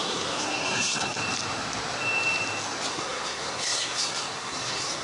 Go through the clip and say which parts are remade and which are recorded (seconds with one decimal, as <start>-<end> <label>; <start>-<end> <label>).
0.0-1.2 remade; 1.2-2.9 recorded; 2.9-5.0 remade